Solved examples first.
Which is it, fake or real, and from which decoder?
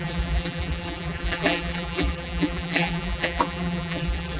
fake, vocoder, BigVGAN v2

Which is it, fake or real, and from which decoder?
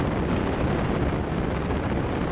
real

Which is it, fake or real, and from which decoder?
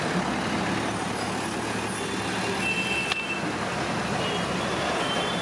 real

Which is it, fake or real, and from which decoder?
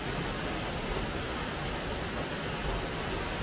real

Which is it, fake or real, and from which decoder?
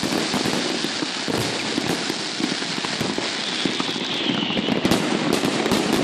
real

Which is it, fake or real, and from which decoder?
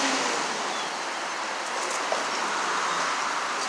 real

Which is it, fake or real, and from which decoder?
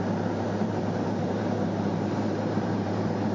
fake, vocoder, BigVGAN v2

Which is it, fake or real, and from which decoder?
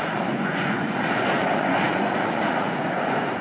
fake, vocoder, Vocos